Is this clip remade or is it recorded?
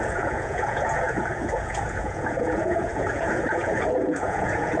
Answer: remade